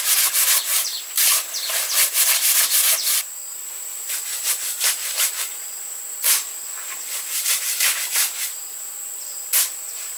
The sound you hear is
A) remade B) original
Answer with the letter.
B